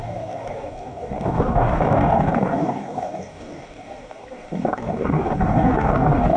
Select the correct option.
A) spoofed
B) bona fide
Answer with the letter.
A